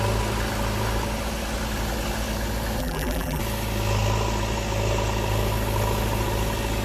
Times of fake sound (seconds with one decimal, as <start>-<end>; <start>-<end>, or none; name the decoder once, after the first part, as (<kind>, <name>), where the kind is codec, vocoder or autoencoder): 2.8-3.4 (vocoder, BigVGAN v2)